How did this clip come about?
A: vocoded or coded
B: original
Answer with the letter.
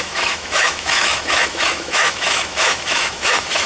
A